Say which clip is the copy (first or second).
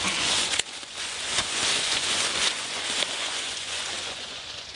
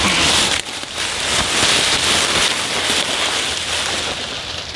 first